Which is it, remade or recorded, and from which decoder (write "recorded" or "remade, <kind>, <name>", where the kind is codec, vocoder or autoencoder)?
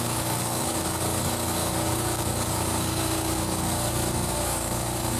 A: remade, codec, DAC